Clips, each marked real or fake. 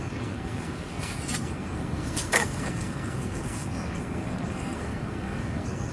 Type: fake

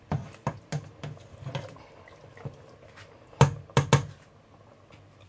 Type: real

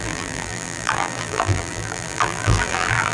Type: fake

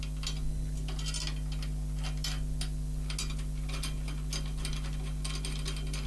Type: real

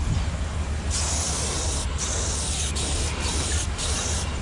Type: real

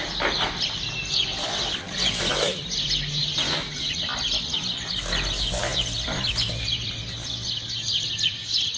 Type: real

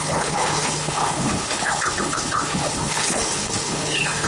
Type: fake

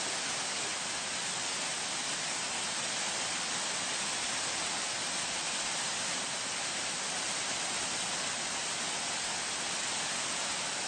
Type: real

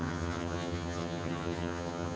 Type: fake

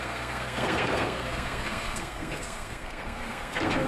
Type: fake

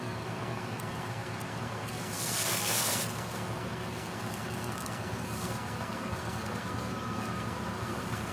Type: fake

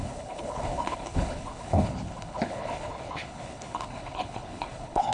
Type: fake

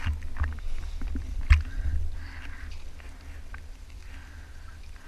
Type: real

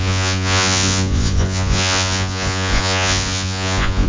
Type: fake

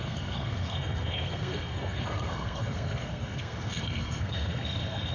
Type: fake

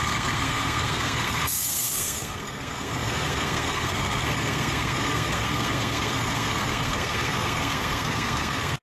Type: fake